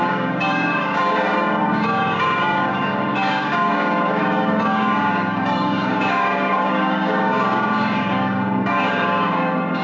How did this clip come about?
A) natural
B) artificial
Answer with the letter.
B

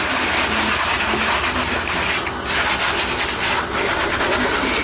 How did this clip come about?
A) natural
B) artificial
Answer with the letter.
A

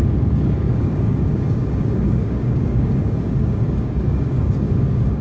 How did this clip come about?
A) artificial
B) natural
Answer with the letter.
A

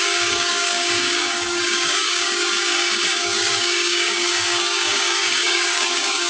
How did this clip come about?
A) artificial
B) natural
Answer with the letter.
A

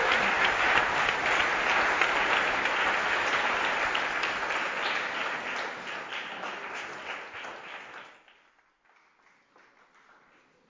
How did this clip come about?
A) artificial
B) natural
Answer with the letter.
B